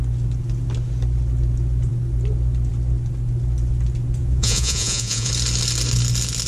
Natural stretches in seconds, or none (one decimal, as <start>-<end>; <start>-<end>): 0.0-4.2; 5.3-6.5